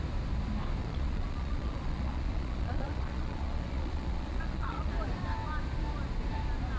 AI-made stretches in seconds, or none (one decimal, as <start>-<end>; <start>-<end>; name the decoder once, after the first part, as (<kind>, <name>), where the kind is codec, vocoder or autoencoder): 0.8-4.9 (vocoder, Vocos)

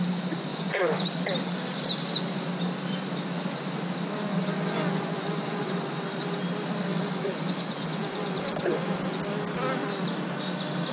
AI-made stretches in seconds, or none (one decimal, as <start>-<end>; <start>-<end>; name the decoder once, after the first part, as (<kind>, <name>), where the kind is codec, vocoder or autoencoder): 0.5-1.1 (vocoder, Vocos); 4.3-5.7; 6.9-9.2

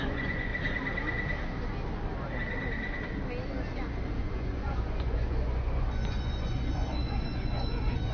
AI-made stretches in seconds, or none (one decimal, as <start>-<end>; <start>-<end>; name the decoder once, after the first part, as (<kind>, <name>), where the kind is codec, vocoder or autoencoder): 0.0-0.5 (vocoder, Vocos); 4.2-8.1

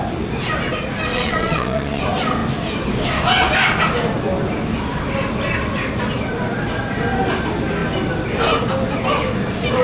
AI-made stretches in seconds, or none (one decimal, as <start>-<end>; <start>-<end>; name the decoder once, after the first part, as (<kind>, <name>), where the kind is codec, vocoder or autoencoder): 1.1-2.0 (vocoder, Vocos)

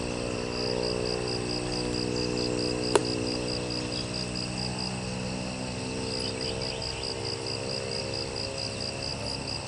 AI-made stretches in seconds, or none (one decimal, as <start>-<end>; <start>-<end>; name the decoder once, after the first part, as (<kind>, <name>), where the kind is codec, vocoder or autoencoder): none

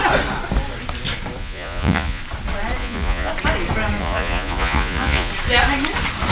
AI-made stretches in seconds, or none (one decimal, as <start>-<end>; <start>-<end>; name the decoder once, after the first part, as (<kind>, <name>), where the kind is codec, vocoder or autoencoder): 1.4-2.2 (vocoder, Vocos); 2.8-3.3; 4.0-5.3

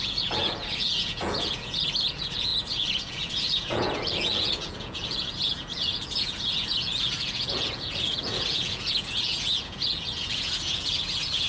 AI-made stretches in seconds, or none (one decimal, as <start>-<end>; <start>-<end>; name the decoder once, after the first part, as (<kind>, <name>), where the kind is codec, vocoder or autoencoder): 0.0-11.5 (vocoder, Vocos)

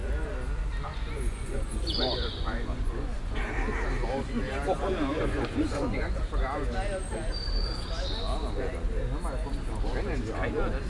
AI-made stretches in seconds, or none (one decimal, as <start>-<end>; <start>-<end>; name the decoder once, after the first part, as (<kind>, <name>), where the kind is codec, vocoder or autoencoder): 0.9-3.4 (vocoder, Vocos); 5.1-6.2